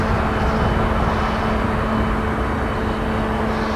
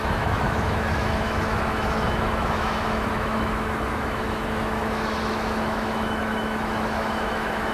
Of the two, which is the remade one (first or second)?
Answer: second